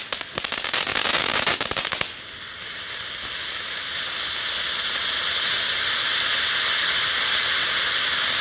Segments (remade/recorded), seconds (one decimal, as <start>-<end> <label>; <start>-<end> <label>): 0.0-8.4 recorded